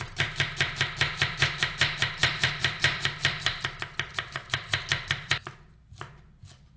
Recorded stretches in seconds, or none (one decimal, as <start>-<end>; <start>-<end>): 0.0-1.1; 1.8-2.2; 5.6-6.8